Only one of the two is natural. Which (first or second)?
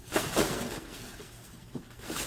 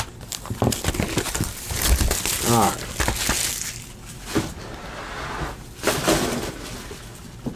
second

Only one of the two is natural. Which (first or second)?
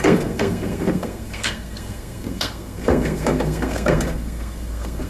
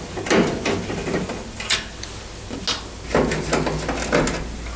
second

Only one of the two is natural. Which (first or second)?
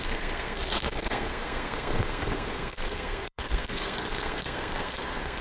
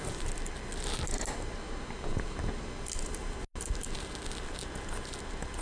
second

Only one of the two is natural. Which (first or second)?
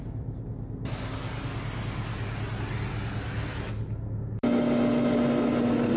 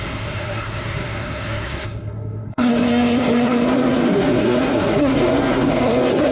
first